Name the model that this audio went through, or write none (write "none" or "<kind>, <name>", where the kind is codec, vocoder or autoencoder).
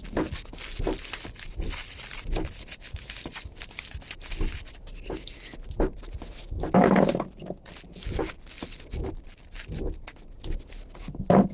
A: none